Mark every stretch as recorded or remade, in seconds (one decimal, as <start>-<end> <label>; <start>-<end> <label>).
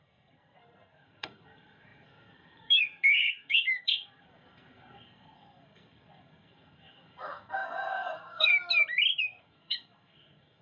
0.0-8.5 remade; 8.5-9.2 recorded; 9.2-10.6 remade